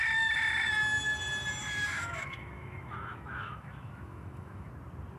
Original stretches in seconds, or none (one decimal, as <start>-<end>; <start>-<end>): 0.0-1.6; 4.7-5.2